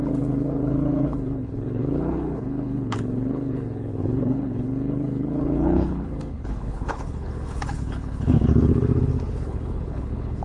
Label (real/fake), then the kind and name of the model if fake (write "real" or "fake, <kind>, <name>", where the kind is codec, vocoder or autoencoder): fake, codec, HILCodec